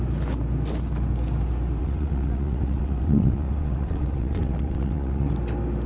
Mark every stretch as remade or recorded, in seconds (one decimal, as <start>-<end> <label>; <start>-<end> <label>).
0.0-1.8 recorded; 1.8-5.3 remade; 5.3-5.9 recorded

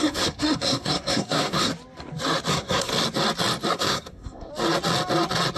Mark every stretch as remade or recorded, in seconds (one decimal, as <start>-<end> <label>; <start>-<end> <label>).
0.0-1.7 remade; 1.7-2.5 recorded; 2.5-2.9 remade; 2.9-3.7 recorded; 3.7-4.5 remade; 4.5-5.6 recorded

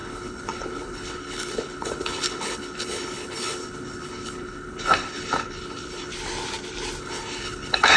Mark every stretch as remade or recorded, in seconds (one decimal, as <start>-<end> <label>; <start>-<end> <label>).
0.0-6.1 remade; 6.1-7.0 recorded; 7.0-8.0 remade

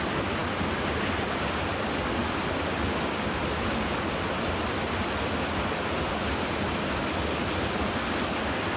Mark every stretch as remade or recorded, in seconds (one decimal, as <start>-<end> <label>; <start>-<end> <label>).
0.0-8.8 recorded

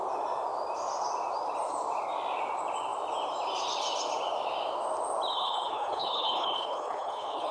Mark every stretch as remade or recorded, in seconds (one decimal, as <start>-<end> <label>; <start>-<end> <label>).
0.0-5.3 recorded; 5.3-7.5 remade